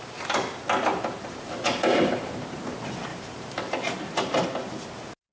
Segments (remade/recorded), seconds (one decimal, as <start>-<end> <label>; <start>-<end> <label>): 0.0-0.9 recorded; 0.9-2.6 remade; 2.6-3.1 recorded; 3.1-4.2 remade; 4.2-5.3 recorded